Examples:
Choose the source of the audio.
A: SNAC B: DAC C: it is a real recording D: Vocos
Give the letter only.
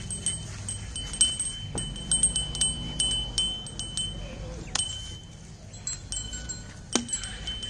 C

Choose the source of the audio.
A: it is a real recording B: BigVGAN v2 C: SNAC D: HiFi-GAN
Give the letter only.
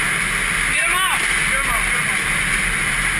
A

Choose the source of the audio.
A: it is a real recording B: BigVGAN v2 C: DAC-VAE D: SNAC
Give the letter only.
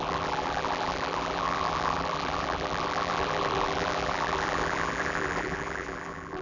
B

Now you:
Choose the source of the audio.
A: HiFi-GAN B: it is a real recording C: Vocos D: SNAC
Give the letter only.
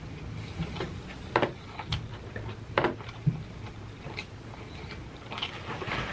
B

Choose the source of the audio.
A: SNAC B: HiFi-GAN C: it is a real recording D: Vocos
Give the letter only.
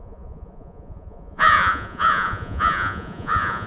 D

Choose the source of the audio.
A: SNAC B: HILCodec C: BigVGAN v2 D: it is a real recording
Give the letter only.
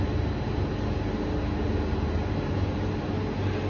D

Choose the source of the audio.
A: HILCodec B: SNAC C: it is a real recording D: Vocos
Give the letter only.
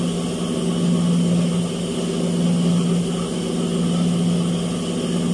C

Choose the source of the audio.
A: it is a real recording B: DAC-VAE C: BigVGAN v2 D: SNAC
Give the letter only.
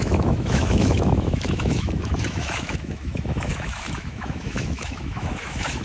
B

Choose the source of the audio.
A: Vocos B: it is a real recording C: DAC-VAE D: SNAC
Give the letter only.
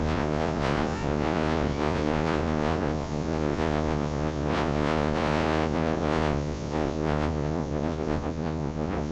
A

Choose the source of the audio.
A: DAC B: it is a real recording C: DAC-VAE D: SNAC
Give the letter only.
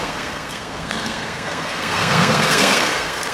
D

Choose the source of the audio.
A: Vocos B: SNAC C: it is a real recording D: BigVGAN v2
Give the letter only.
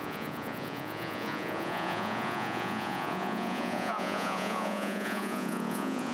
A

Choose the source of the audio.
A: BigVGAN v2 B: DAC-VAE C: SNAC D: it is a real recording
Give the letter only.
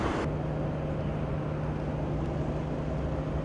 D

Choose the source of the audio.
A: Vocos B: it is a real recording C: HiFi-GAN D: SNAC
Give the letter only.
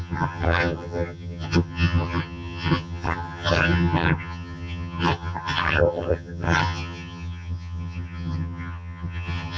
C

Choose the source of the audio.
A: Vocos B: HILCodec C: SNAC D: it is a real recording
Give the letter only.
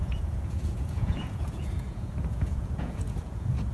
A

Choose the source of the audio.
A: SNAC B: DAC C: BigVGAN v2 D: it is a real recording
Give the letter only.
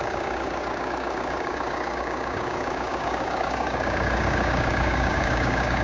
B